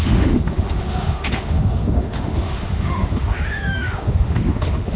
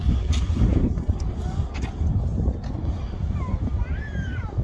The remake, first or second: first